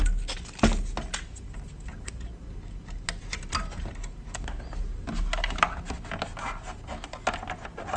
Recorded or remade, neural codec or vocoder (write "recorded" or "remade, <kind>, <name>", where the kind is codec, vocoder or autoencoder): recorded